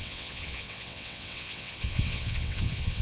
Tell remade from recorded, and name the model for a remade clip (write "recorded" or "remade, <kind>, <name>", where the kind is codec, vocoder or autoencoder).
remade, vocoder, WaveNeXt